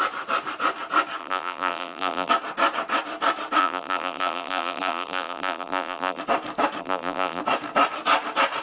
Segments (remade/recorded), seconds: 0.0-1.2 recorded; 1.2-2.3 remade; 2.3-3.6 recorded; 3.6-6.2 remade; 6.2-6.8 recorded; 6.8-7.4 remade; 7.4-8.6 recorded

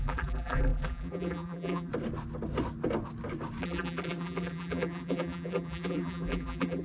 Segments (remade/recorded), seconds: 0.0-1.9 remade; 1.9-3.6 recorded; 3.6-6.8 remade